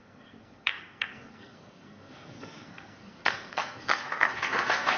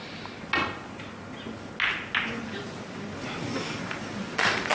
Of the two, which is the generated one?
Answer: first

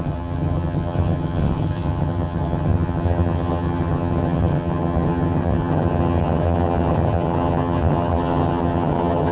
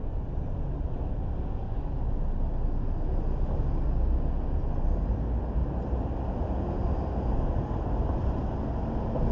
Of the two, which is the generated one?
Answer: first